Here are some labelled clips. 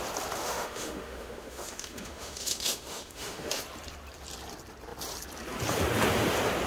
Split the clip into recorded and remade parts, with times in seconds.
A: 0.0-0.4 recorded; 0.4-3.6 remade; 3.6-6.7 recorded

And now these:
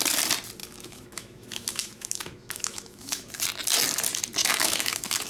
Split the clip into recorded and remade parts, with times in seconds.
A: 0.0-0.6 recorded; 0.6-3.4 remade; 3.4-4.4 recorded; 4.4-5.3 remade

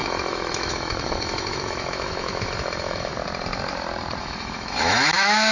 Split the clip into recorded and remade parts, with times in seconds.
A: 0.0-3.1 remade; 3.1-4.2 recorded; 4.2-5.5 remade

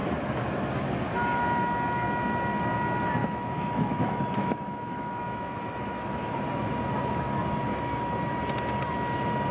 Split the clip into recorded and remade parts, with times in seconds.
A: 0.0-3.2 recorded; 3.2-6.4 remade; 6.4-9.5 recorded

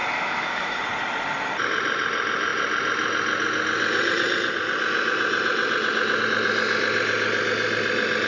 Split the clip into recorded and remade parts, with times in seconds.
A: 0.0-0.8 remade; 0.8-8.3 recorded

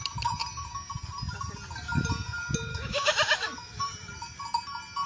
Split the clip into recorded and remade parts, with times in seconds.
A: 0.0-2.7 recorded; 2.7-3.8 remade; 3.8-5.1 recorded

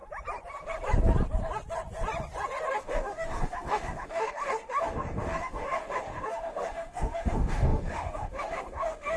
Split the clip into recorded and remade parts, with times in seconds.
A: 0.0-2.7 recorded; 2.7-9.2 remade